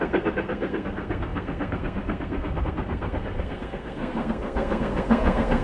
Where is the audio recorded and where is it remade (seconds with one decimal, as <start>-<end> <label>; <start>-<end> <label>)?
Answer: 0.0-5.6 remade